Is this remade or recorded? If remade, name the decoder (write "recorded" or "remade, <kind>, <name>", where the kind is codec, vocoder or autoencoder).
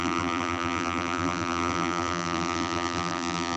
remade, vocoder, BigVGAN v2